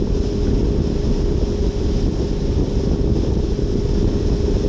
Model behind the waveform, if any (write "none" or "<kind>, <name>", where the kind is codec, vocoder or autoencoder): none